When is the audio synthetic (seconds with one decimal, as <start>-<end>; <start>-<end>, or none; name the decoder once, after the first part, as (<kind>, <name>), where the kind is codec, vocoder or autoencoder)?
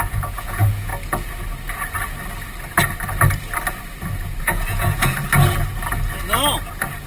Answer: 0.0-0.9 (vocoder, Vocos); 4.4-5.2